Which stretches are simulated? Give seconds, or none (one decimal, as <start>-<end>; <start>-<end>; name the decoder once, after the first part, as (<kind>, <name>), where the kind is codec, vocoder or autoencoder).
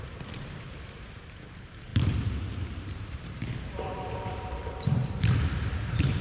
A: 0.0-6.2 (vocoder, BigVGAN v2)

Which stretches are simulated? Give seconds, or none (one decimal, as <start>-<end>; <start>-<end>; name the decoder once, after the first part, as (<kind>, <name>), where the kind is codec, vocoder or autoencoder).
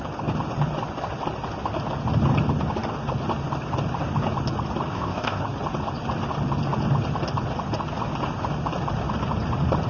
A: 4.9-5.4 (codec, ZipCodec)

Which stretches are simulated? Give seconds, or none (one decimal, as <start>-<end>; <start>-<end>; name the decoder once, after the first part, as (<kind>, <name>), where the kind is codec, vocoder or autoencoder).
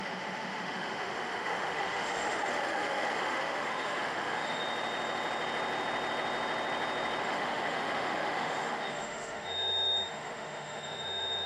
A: 0.0-4.6 (autoencoder, DAC-VAE); 7.2-11.5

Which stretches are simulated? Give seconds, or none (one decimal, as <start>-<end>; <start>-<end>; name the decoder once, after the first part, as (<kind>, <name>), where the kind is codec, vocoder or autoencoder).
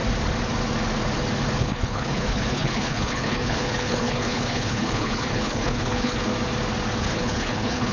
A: 1.6-6.3 (codec, HILCodec); 7.0-7.9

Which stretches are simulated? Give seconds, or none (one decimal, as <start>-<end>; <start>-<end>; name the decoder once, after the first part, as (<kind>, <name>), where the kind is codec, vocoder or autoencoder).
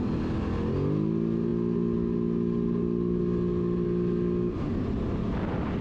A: none